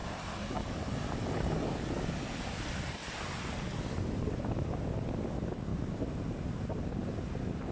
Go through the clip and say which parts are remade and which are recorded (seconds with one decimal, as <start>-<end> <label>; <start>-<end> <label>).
0.0-5.7 recorded; 5.7-6.9 remade; 6.9-7.7 recorded